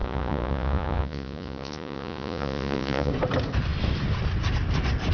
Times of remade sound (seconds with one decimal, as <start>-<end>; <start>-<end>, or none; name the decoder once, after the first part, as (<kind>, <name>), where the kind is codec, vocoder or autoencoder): 0.0-3.1 (vocoder, Vocos)